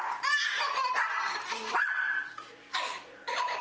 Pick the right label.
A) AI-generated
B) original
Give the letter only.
A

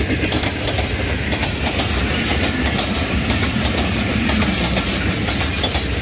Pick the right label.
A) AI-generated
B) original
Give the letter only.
B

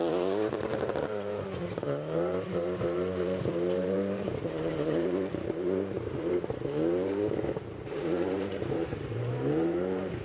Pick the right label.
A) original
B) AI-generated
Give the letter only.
B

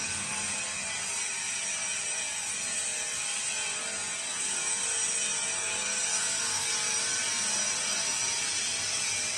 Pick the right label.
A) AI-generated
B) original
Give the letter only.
B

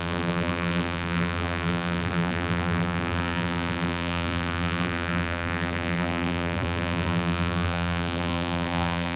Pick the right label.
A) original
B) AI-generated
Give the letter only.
B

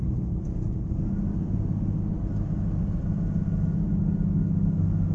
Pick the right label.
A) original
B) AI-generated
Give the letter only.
A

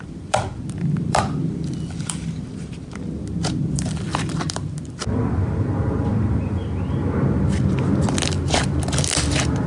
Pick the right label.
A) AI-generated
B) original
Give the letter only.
A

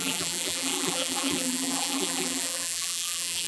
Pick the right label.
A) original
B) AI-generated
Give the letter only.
B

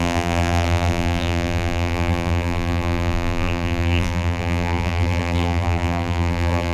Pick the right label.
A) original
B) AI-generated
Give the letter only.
B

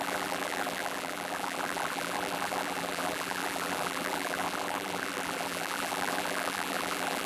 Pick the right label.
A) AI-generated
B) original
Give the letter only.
A